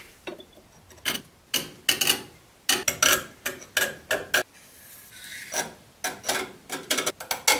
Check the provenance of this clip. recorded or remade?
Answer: recorded